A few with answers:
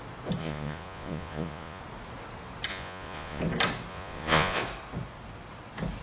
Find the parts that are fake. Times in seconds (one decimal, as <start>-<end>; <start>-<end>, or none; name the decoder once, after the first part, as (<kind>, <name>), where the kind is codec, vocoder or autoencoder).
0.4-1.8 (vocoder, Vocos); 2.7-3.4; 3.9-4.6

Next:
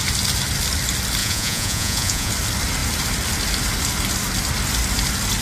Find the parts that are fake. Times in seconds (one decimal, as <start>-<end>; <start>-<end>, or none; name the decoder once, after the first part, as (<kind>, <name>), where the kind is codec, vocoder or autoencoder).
1.2-2.3 (vocoder, Vocos)

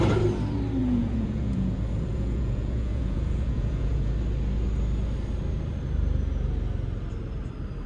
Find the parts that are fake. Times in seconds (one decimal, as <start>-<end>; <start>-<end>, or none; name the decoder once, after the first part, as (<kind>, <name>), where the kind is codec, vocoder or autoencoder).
0.8-4.1 (vocoder, Vocos)

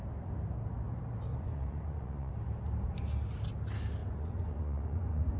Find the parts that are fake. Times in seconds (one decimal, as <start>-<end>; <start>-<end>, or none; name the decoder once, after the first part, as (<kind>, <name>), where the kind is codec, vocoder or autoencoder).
1.3-2.3 (vocoder, Vocos); 4.0-5.4

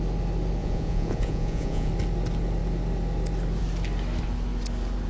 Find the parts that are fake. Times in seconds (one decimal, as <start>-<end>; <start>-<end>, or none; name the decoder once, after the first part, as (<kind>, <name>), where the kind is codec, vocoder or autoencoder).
0.6-1.9 (vocoder, Vocos)

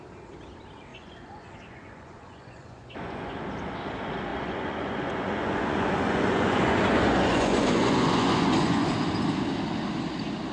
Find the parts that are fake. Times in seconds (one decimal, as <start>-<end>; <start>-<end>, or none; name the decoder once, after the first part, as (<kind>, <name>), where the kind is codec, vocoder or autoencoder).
0.9-3.3 (vocoder, Vocos); 4.3-8.9

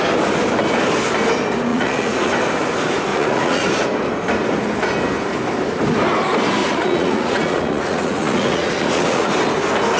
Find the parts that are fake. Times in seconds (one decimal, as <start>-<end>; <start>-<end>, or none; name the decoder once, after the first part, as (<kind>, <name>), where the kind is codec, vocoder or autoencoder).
1.7-2.3 (vocoder, Vocos); 3.1-3.7; 6.6-9.3